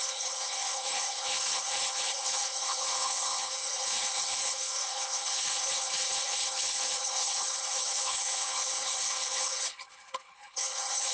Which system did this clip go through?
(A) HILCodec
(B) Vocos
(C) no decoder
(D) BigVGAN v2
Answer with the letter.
A